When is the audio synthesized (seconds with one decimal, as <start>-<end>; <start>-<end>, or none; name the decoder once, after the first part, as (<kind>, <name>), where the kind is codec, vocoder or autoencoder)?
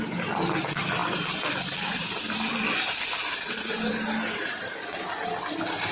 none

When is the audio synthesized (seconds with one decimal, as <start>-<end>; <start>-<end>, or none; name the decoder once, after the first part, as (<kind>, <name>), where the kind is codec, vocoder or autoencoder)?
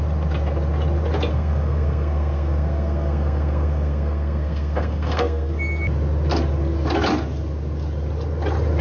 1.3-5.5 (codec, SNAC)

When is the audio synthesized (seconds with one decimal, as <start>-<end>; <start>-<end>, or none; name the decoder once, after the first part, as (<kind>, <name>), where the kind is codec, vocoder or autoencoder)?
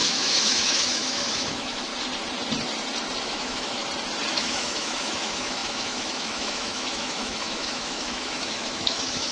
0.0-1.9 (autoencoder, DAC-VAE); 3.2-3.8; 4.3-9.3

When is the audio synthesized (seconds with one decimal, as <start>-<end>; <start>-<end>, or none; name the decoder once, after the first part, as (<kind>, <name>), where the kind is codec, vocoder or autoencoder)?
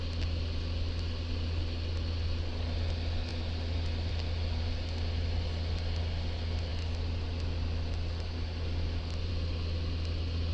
none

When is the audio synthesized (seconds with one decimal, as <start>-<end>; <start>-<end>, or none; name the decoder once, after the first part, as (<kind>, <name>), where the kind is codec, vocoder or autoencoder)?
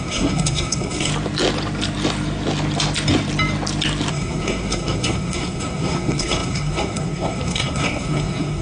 0.0-1.1 (codec, SNAC); 4.1-8.6